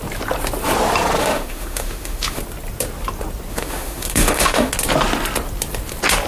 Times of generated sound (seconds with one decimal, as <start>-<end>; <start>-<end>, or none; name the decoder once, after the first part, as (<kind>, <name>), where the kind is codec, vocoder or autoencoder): 1.2-2.4 (autoencoder, DAC-VAE); 3.5-4.7

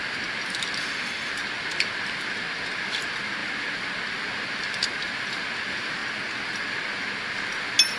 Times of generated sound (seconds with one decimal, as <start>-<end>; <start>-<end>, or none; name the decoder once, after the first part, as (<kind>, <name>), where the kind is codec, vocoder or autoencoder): 0.8-1.3 (autoencoder, DAC-VAE)

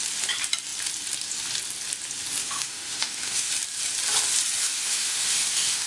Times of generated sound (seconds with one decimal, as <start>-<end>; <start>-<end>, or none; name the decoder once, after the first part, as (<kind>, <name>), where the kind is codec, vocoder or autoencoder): 2.4-3.5 (autoencoder, DAC-VAE); 4.6-5.9

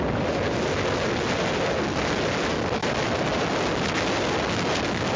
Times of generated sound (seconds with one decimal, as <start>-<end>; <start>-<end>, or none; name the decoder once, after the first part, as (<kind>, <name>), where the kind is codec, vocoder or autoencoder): none

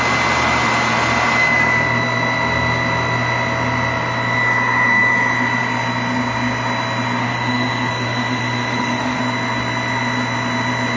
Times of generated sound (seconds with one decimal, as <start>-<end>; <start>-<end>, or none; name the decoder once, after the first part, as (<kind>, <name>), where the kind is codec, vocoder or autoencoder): 7.2-9.2 (autoencoder, DAC-VAE)

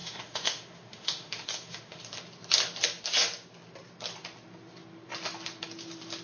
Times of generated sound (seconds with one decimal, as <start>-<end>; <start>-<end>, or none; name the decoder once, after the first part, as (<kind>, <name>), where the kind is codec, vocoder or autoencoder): 0.0-2.0 (autoencoder, DAC-VAE)